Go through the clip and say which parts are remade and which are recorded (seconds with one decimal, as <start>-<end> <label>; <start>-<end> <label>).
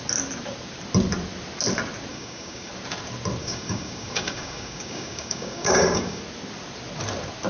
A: 0.0-2.1 recorded; 2.1-2.7 remade; 2.7-3.4 recorded; 3.4-6.2 remade; 6.2-7.5 recorded